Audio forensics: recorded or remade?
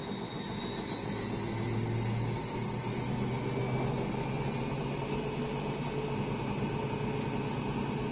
recorded